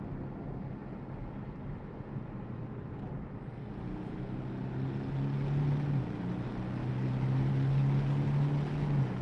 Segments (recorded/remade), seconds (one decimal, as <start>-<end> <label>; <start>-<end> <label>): 0.0-9.2 recorded